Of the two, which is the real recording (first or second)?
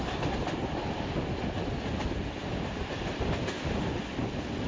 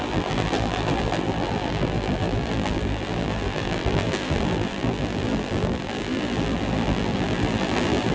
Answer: first